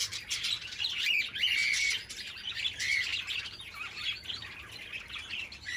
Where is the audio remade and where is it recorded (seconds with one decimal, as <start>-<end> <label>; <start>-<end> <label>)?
0.0-5.8 recorded